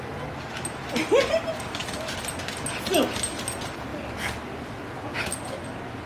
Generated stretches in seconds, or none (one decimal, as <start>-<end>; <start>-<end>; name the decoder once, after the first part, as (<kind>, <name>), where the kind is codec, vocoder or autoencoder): 1.8-2.5 (vocoder, BigVGAN v2)